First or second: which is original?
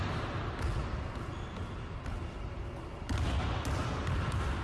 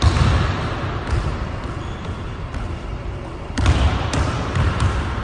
first